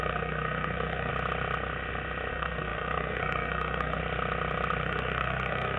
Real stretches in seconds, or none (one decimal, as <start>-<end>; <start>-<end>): 1.1-2.3; 4.0-4.8